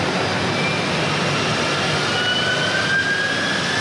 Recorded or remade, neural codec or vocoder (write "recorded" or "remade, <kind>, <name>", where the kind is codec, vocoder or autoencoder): recorded